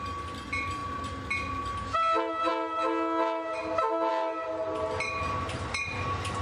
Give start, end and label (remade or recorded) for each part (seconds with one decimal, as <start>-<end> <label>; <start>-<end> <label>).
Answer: 0.0-6.4 recorded